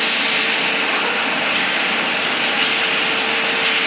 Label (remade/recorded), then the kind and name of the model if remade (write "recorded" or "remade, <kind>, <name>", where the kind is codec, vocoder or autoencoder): remade, vocoder, BigVGAN v2